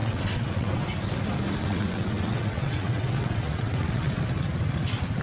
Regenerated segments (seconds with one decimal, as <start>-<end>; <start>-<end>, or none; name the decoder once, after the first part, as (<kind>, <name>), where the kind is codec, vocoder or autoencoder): 0.0-0.8 (vocoder, WaveNeXt); 1.6-4.2